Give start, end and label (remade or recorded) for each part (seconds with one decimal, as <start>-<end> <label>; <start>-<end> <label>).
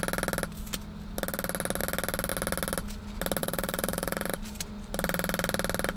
0.0-3.4 recorded; 3.4-4.7 remade; 4.7-6.0 recorded